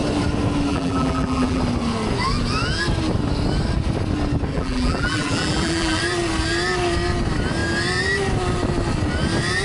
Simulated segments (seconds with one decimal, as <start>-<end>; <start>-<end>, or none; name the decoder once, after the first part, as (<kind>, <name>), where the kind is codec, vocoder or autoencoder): 0.7-1.6 (vocoder, BigVGAN v2); 4.5-6.0